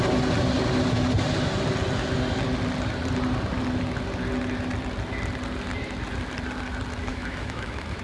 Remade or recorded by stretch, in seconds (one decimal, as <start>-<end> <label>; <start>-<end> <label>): 0.0-7.1 recorded; 7.1-8.0 remade